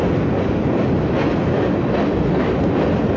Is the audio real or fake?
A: real